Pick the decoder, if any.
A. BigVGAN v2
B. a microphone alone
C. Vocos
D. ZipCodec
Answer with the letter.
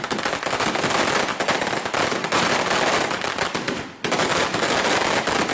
B